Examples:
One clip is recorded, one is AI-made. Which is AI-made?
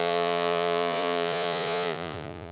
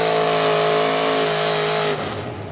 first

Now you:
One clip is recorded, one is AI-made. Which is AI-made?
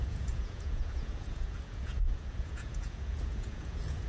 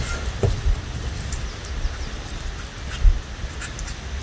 first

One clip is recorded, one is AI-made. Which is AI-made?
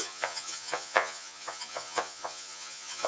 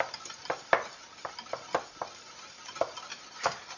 first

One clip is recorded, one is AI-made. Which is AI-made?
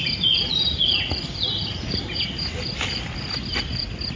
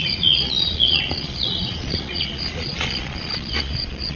second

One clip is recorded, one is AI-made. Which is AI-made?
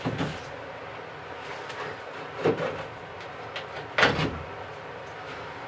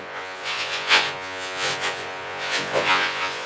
second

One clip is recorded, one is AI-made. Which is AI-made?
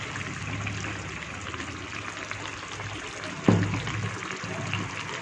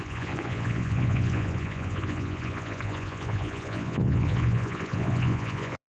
second